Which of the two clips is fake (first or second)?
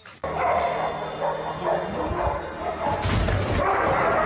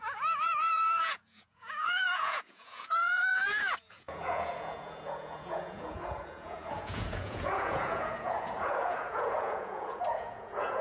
second